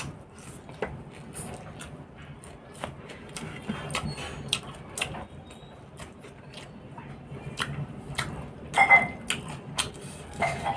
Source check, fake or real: real